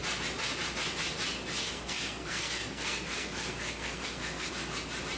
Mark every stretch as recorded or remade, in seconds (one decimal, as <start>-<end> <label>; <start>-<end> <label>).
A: 0.0-1.6 recorded; 1.6-4.5 remade; 4.5-5.2 recorded